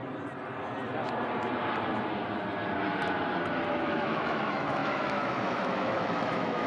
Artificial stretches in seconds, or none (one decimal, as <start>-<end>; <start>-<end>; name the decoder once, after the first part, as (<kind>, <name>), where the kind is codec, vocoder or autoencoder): 3.7-6.7 (autoencoder, DAC-VAE)